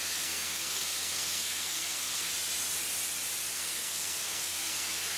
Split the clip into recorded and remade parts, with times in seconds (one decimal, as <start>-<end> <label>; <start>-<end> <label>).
0.0-2.3 remade; 2.3-3.5 recorded; 3.5-5.2 remade